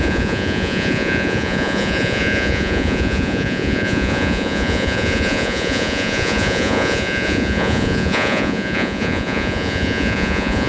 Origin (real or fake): fake